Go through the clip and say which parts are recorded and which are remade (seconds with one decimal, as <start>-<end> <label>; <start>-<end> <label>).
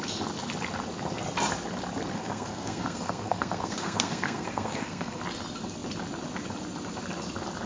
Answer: 0.0-2.1 recorded; 2.1-5.2 remade; 5.2-7.7 recorded